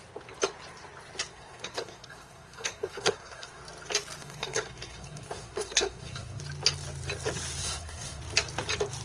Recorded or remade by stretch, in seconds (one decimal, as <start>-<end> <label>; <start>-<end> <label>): 0.0-1.3 recorded; 1.3-3.6 remade; 3.6-4.2 recorded; 4.2-6.4 remade; 6.4-7.6 recorded; 7.6-8.2 remade; 8.2-9.0 recorded